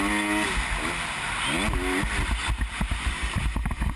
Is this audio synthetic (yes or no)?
no